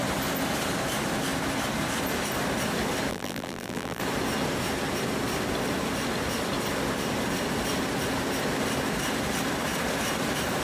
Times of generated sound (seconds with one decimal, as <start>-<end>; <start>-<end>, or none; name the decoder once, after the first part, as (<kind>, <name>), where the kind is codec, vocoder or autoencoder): 3.1-4.0 (vocoder, BigVGAN v2)